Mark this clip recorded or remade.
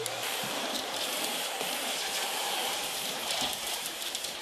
remade